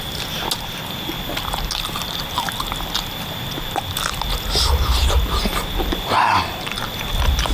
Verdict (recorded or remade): recorded